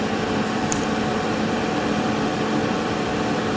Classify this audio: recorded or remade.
remade